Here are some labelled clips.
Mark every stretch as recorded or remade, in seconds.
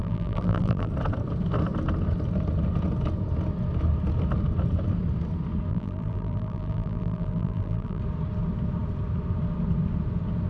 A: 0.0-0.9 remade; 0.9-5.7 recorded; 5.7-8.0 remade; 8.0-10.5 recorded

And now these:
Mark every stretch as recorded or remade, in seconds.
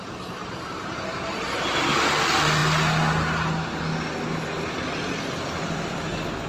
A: 0.0-0.4 recorded; 0.4-1.8 remade; 1.8-6.5 recorded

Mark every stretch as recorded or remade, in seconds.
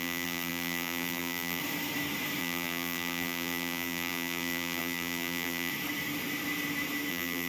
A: 0.0-1.6 remade; 1.6-2.4 recorded; 2.4-5.7 remade; 5.7-7.1 recorded; 7.1-7.5 remade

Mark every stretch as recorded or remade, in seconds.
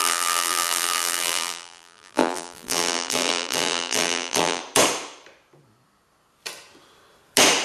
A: 0.0-4.6 remade; 4.6-7.6 recorded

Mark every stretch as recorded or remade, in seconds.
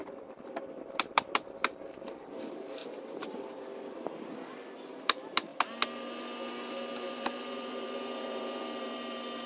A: 0.0-2.8 remade; 2.8-4.9 recorded; 4.9-5.5 remade; 5.5-7.1 recorded; 7.1-9.5 remade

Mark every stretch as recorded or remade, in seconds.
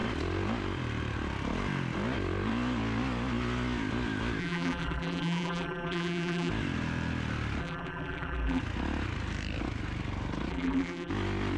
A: 0.0-4.4 recorded; 4.4-6.5 remade; 6.5-7.6 recorded; 7.6-8.6 remade; 8.6-10.5 recorded; 10.5-11.1 remade; 11.1-11.6 recorded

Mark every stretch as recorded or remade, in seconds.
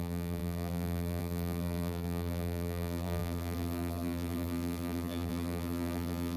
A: 0.0-6.4 remade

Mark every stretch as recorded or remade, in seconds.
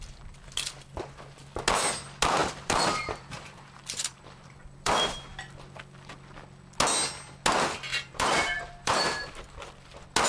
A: 0.0-2.4 recorded; 2.4-4.9 remade; 4.9-7.9 recorded; 7.9-9.3 remade; 9.3-10.3 recorded